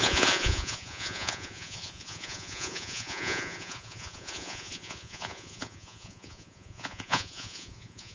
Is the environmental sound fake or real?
fake